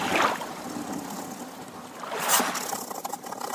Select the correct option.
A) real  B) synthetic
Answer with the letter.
A